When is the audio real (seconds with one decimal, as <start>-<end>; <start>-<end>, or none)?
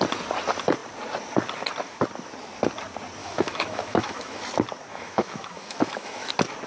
0.0-3.2; 4.4-4.9; 6.3-6.7